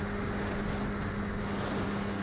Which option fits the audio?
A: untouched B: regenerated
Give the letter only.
A